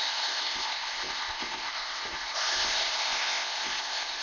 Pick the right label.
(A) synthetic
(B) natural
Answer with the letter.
A